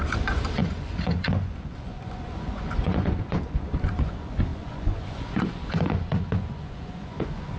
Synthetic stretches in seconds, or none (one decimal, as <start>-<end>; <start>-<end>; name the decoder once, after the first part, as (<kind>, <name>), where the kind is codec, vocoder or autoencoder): 0.0-7.6 (vocoder, Vocos)